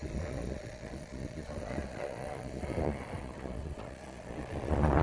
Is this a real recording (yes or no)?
no